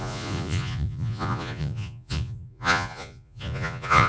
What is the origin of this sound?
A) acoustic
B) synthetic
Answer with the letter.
B